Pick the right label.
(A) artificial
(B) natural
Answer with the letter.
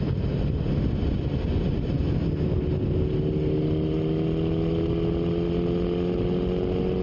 B